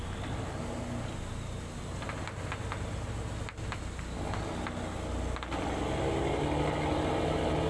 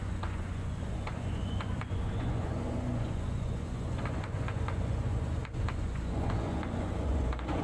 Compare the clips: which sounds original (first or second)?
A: first